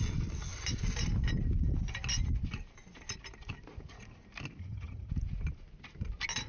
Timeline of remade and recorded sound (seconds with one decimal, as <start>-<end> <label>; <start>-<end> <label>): 0.0-4.6 recorded; 4.6-5.1 remade; 5.1-6.5 recorded